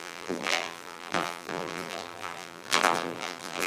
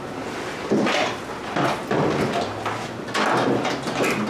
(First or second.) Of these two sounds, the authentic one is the second